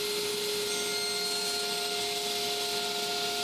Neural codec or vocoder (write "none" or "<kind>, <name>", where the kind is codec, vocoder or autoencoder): none